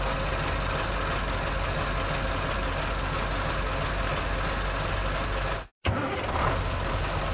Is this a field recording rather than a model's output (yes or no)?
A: yes